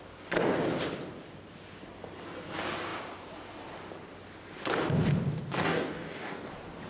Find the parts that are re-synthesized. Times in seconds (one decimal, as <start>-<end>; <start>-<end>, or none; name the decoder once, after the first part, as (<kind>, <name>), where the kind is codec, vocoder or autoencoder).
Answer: 5.6-6.5 (codec, DAC)